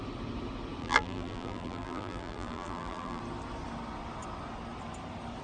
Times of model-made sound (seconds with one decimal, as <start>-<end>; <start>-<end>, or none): 0.8-3.2